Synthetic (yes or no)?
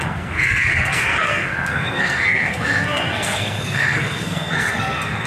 yes